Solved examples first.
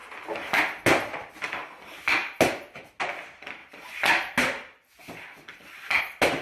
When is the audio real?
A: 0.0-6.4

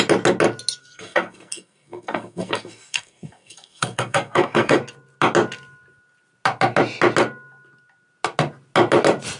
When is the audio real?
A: 0.0-0.8; 4.8-9.4

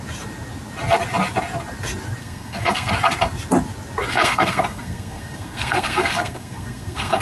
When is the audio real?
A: 0.0-2.2; 2.9-4.1

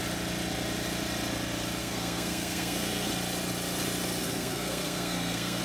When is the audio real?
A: 0.0-1.8; 3.1-4.2

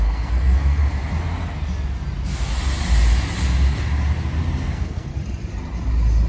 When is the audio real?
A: 0.8-4.6; 5.1-6.3